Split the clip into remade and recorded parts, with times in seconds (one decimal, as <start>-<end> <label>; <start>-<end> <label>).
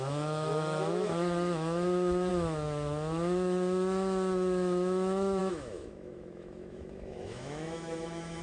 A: 0.0-8.4 remade